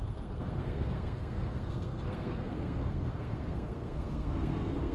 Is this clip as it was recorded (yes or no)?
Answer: no